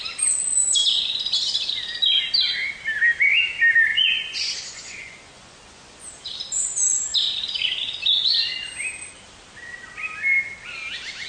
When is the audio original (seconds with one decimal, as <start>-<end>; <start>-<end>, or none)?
0.0-3.9; 6.1-11.3